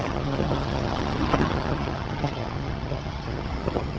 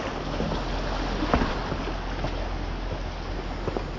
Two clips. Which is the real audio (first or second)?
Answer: second